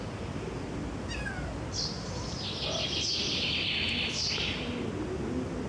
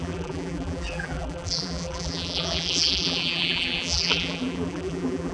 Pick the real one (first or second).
first